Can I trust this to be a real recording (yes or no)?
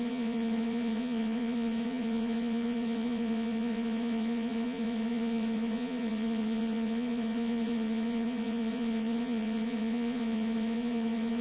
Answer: no